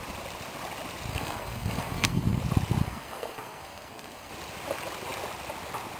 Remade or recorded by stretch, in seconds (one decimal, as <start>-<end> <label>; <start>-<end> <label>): 0.0-1.1 recorded; 1.1-2.4 remade; 2.4-2.8 recorded; 2.8-4.3 remade; 4.3-6.0 recorded